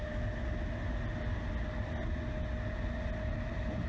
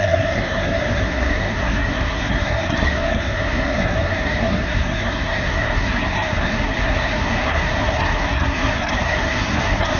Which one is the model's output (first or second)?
second